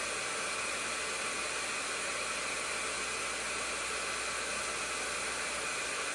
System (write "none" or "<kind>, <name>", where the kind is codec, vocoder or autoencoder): none